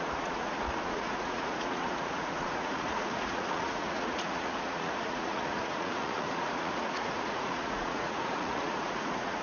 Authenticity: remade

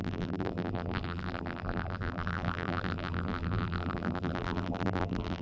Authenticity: remade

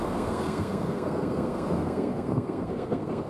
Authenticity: remade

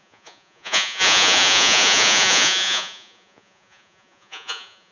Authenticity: remade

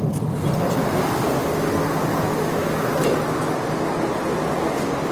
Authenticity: recorded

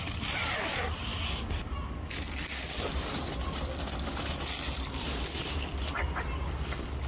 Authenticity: recorded